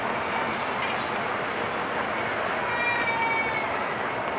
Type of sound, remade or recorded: recorded